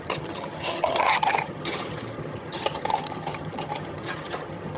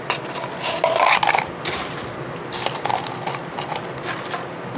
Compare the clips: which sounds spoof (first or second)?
first